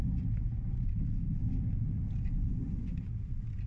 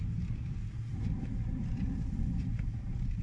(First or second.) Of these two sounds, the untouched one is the first